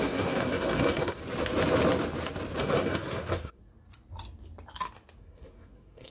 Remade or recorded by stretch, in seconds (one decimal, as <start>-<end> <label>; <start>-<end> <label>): 0.0-1.2 remade; 1.2-2.6 recorded; 2.6-3.6 remade; 3.6-5.2 recorded; 5.2-6.1 remade